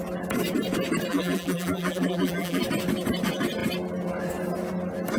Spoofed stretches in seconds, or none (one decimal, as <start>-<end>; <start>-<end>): 1.1-2.6